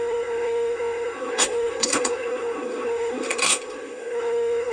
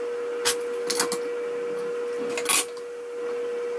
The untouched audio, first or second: second